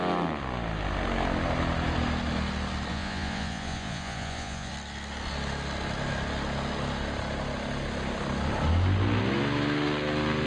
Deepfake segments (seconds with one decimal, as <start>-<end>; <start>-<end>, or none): 2.9-4.7